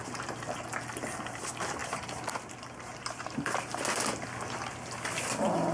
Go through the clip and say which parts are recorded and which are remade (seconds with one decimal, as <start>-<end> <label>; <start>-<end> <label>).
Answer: 0.0-5.7 recorded